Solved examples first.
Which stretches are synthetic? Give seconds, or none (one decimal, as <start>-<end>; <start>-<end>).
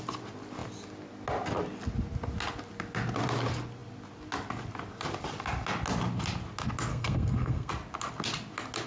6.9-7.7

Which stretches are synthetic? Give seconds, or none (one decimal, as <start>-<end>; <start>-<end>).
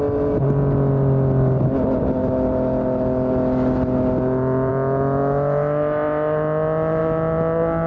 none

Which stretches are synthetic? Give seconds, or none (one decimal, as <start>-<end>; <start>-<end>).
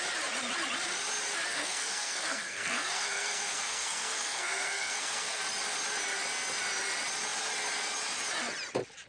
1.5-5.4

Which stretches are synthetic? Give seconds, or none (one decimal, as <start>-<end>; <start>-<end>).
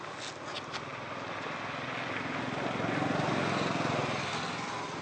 none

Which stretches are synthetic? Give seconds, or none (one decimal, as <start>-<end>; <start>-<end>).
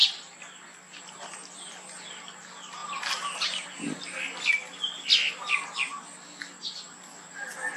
none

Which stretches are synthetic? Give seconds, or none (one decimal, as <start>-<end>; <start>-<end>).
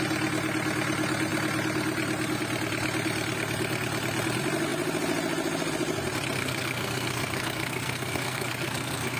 6.4-9.2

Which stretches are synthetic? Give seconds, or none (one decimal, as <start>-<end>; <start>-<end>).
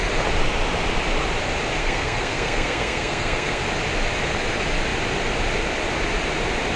1.8-3.6